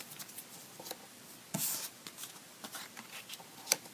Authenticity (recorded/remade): recorded